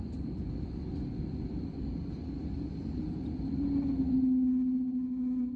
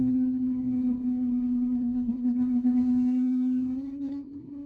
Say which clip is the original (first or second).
first